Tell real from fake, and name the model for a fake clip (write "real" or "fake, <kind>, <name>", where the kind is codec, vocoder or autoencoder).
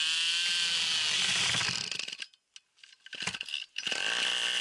real